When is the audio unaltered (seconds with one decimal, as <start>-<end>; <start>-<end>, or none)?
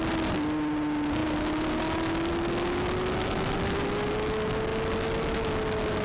0.0-6.0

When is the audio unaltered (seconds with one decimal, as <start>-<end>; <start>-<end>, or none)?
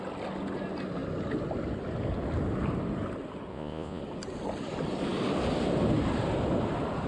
0.0-3.5; 4.0-7.1